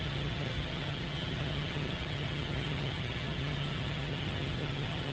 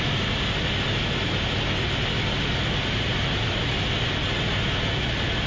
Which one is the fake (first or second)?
first